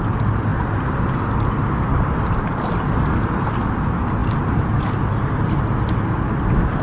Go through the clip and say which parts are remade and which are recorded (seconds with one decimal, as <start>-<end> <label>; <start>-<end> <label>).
0.0-6.8 recorded